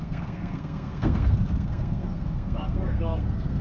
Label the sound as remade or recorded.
remade